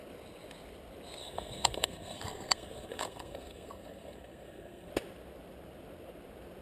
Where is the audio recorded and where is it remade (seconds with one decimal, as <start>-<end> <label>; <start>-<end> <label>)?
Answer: 0.0-1.2 recorded; 1.2-4.9 remade; 4.9-6.6 recorded